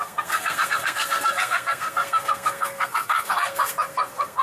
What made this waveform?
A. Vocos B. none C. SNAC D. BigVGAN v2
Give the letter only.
C